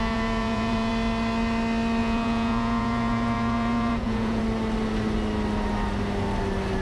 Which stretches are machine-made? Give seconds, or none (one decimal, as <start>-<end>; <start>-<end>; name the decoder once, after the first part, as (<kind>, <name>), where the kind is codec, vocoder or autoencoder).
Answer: 0.0-0.9 (vocoder, Vocos); 2.0-4.4